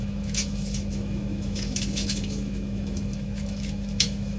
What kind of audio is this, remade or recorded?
remade